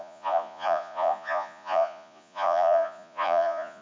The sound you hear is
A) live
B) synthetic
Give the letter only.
B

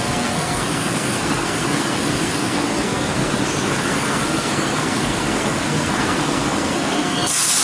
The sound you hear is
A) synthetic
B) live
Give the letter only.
A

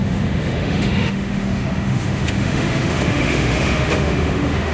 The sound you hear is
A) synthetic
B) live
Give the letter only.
A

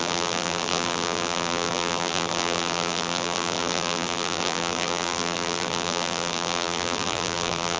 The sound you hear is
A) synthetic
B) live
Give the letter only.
A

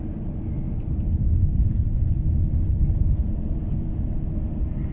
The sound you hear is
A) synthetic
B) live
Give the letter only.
B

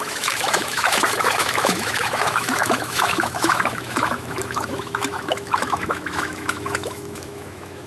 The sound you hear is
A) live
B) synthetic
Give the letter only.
B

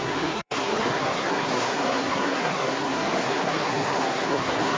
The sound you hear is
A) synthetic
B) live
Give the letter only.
A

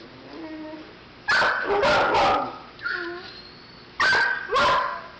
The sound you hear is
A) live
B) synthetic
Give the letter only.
A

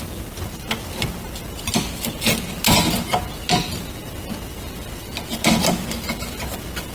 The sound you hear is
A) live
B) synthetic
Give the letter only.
A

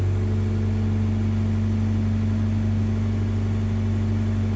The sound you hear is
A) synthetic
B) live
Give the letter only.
B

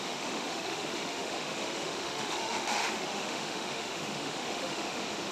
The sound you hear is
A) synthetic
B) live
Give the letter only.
A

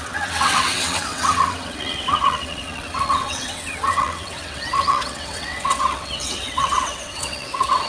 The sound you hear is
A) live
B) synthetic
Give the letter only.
B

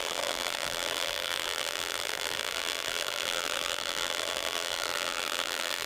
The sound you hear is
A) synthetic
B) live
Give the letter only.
A